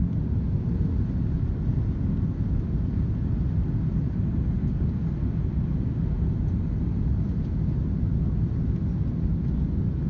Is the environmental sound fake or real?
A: real